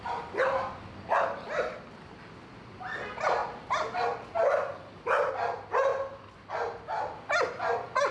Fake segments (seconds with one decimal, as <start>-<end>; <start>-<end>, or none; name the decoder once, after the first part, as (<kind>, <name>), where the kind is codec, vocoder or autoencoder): none